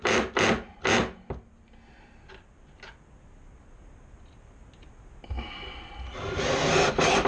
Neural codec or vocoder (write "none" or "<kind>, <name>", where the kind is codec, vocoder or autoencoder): none